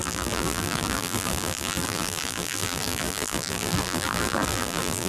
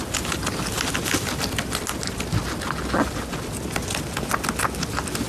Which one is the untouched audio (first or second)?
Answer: second